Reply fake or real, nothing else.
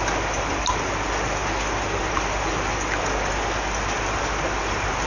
real